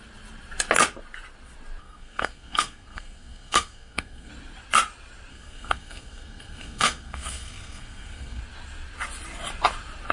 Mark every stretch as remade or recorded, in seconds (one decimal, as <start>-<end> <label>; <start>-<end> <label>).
0.0-1.8 recorded; 1.8-4.3 remade; 4.3-5.3 recorded; 5.3-8.4 remade; 8.4-10.1 recorded